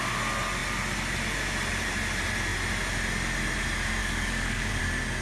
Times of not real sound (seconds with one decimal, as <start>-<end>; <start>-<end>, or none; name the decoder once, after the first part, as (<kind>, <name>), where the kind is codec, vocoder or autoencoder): 4.0-4.8 (codec, DAC)